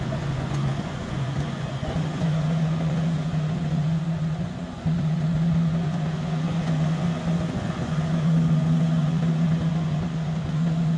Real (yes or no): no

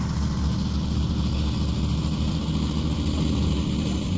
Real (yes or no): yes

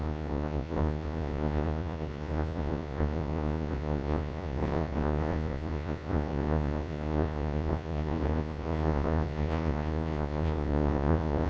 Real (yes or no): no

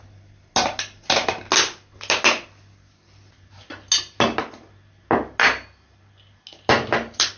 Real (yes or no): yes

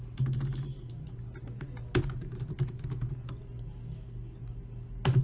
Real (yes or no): yes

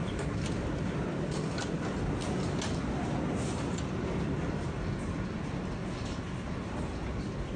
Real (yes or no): yes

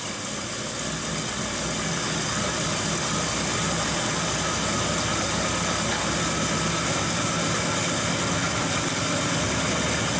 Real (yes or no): yes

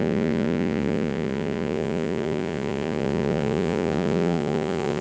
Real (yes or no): no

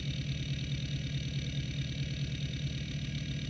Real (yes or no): yes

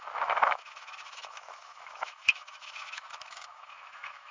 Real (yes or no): no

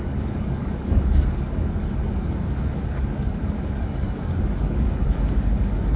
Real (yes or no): no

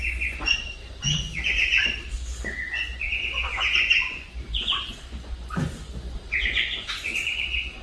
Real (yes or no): no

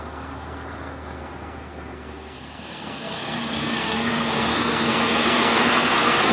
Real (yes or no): no